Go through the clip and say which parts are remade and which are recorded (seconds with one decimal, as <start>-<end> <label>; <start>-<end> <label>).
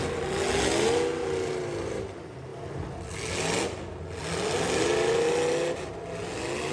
0.0-6.7 recorded